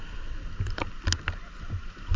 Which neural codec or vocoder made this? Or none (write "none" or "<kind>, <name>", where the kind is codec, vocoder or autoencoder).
none